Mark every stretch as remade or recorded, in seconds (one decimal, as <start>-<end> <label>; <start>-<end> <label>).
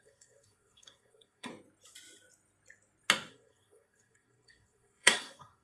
0.0-1.5 remade; 1.5-3.3 recorded; 3.3-5.6 remade